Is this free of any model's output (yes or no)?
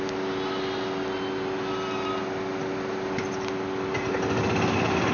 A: yes